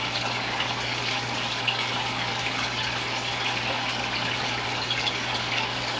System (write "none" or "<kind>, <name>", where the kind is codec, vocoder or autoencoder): codec, DAC